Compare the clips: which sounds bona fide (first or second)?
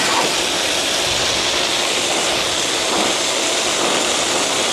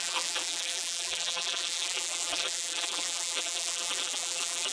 first